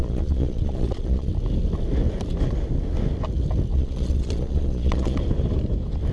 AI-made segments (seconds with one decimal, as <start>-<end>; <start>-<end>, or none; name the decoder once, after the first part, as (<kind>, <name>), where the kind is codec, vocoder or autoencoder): 0.0-1.3 (vocoder, Vocos); 3.7-5.2